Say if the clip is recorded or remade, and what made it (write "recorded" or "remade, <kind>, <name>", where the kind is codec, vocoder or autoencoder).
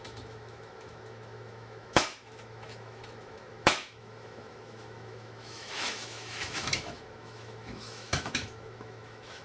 remade, autoencoder, DAC-VAE